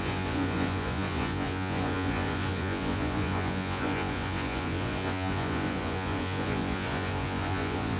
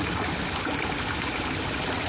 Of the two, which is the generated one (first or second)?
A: first